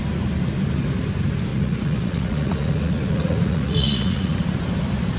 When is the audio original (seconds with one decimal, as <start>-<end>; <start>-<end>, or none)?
0.0-1.5; 4.6-5.2